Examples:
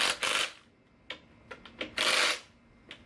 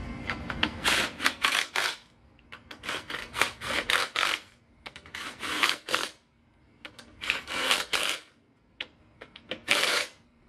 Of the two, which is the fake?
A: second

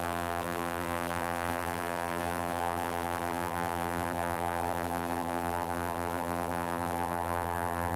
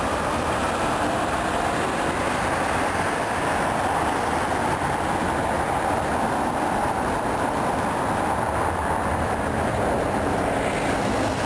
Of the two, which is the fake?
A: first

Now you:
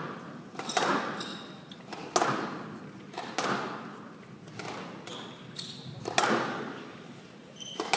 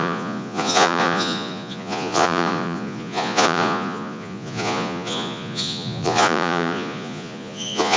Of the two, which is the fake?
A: second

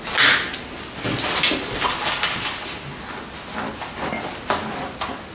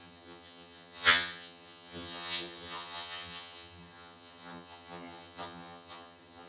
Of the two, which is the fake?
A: second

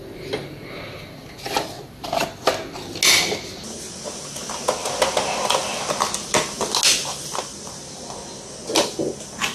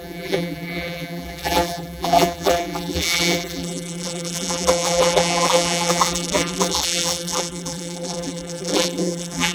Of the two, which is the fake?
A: second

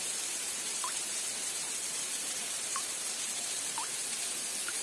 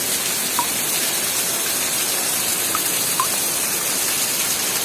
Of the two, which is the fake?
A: first